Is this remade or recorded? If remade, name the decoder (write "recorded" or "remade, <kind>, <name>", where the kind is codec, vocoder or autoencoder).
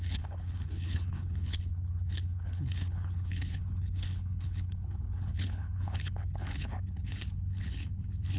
remade, codec, HILCodec